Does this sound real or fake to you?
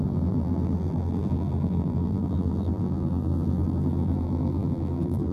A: fake